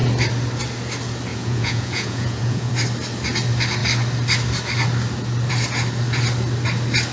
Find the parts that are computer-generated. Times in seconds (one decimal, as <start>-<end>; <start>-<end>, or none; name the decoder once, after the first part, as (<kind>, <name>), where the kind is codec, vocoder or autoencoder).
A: 1.3-2.7 (vocoder, Vocos)